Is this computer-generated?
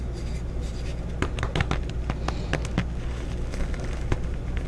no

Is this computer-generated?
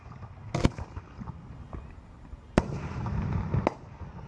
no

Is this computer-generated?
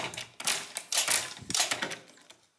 no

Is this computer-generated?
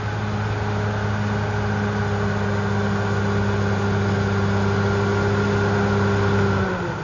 no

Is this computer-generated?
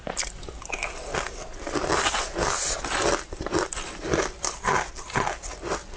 no